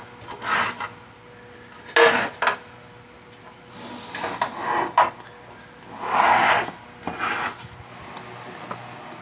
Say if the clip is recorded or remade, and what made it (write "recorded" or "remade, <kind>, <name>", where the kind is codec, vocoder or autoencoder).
recorded